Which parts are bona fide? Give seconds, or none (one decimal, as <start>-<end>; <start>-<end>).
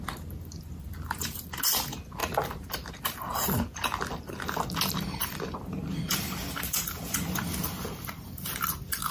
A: 0.0-2.2; 2.9-5.2